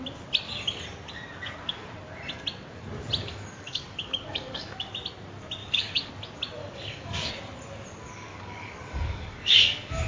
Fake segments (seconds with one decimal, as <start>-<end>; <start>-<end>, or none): 3.2-4.9; 5.6-6.1; 6.6-7.3; 8.0-10.1